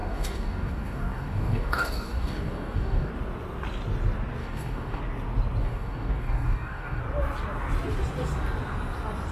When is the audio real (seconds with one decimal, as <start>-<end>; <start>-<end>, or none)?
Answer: 3.1-4.4; 5.0-5.6; 7.0-9.3